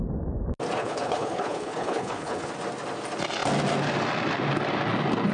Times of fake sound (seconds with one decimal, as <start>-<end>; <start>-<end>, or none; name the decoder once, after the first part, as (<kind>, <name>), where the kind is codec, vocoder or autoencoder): 0.8-2.5 (codec, HILCodec)